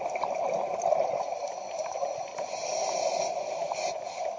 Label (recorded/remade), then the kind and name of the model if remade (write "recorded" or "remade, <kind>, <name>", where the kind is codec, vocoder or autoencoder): recorded